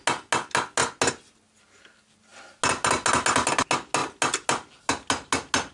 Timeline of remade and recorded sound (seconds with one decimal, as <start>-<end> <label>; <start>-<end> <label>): 0.0-5.7 recorded